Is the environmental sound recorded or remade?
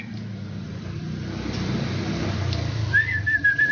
remade